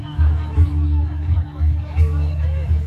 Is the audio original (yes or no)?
no